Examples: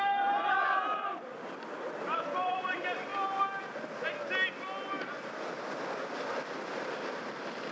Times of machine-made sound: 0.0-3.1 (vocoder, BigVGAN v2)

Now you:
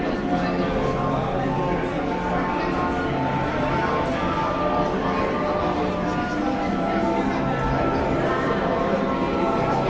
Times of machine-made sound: 8.3-8.8 (vocoder, BigVGAN v2)

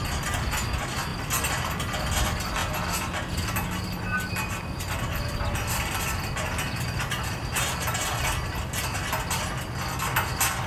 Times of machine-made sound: none

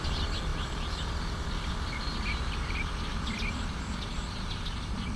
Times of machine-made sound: none

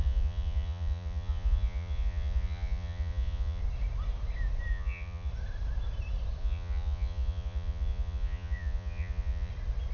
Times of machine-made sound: 0.0-3.6 (vocoder, Vocos); 4.7-5.3; 6.4-9.5

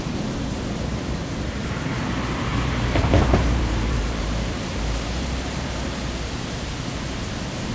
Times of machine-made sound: 0.9-2.0 (vocoder, BigVGAN v2); 2.5-6.0

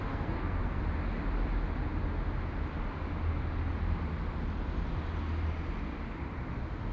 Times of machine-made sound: 0.0-0.8 (codec, SNAC)

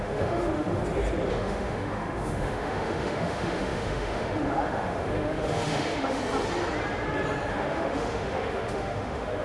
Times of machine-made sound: 0.0-0.8 (autoencoder, DAC-VAE); 1.3-6.2; 7.5-9.4